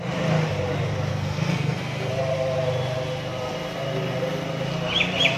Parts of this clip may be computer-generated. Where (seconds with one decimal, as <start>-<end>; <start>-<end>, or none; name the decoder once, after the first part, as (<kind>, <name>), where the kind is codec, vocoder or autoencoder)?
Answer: 1.1-2.1 (codec, SNAC)